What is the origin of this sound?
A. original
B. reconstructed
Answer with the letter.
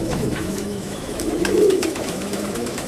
B